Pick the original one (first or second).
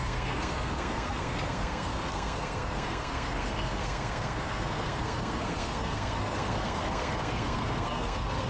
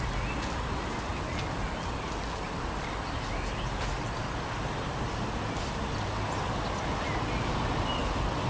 second